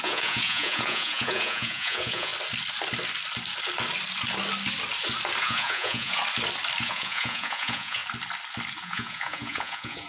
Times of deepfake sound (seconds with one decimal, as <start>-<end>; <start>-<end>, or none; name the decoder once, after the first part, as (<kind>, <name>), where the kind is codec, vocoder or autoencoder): 0.0-2.3 (vocoder, Vocos); 5.4-6.2; 6.8-8.0; 8.8-10.1